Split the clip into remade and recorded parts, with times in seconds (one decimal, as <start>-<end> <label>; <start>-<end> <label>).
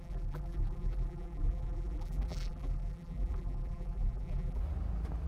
0.0-4.6 remade; 4.6-5.3 recorded